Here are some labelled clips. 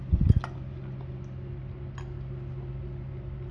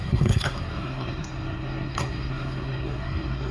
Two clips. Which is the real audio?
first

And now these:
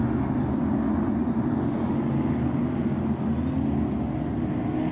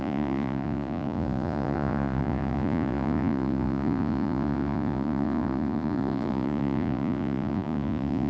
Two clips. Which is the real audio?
first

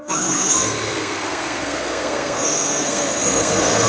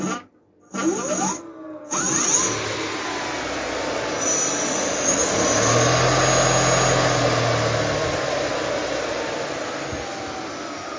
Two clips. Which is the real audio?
second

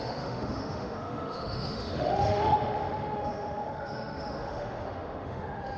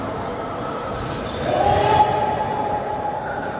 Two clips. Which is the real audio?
second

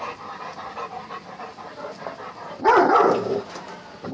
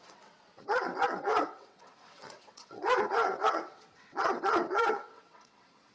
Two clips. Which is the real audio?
first